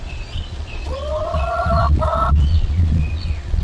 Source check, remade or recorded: remade